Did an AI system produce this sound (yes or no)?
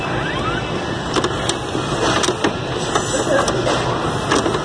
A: no